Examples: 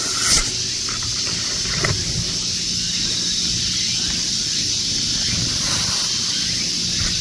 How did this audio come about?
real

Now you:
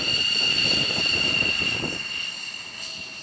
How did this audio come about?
real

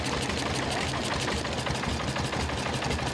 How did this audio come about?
real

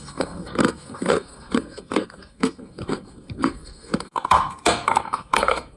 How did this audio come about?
fake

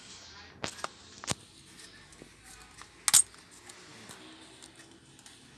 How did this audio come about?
real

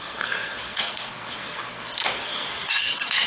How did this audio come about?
fake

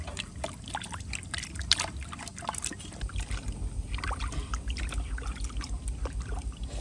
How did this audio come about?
real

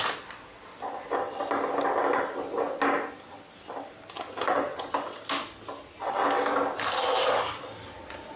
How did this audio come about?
real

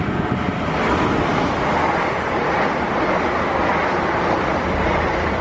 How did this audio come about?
real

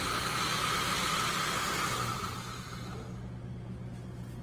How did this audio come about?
real